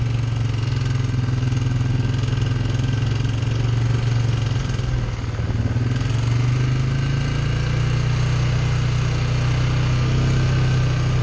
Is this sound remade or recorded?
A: recorded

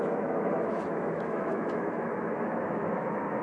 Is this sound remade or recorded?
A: remade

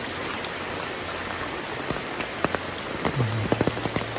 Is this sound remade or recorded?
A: recorded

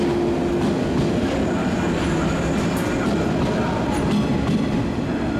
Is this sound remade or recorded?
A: recorded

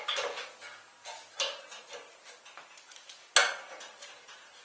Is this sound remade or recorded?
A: recorded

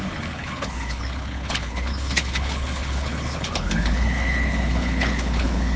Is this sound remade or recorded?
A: remade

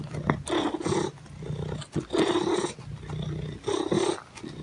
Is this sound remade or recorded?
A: recorded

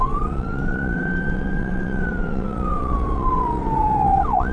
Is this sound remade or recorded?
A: remade